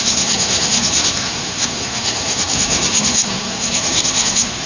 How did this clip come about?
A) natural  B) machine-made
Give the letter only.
B